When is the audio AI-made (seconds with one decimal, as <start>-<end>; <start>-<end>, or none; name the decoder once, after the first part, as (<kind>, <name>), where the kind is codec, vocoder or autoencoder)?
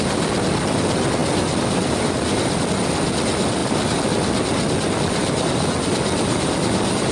1.2-2.6 (vocoder, BigVGAN v2)